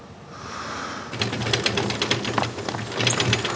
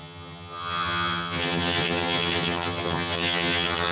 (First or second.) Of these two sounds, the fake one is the second